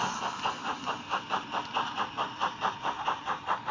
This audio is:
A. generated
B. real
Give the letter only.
B